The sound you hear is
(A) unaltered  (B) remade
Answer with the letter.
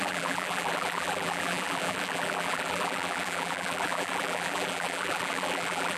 B